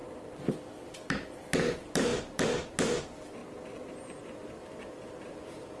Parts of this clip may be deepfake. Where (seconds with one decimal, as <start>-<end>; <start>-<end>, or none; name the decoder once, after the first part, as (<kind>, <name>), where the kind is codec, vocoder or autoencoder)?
none